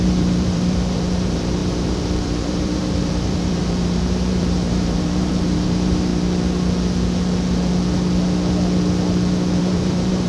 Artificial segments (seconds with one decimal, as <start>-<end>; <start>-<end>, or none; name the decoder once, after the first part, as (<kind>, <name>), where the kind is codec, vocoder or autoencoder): 0.0-6.1 (vocoder, BigVGAN v2); 9.6-10.3